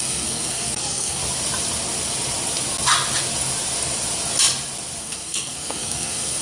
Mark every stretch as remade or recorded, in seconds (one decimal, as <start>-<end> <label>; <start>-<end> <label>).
0.0-1.2 remade; 1.2-5.0 recorded; 5.0-6.4 remade